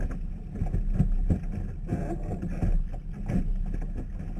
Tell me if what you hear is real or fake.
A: real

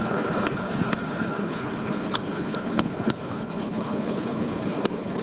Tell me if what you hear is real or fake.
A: fake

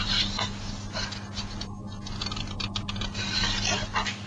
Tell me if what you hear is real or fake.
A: real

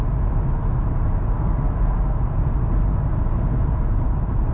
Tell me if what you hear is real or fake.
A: real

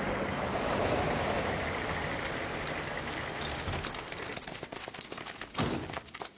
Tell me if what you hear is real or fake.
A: real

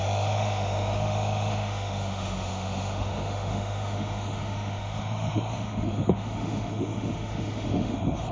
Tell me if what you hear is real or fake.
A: fake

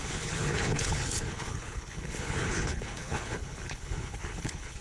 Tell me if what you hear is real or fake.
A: fake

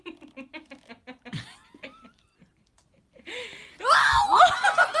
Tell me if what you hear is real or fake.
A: fake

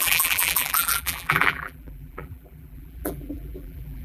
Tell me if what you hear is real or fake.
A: fake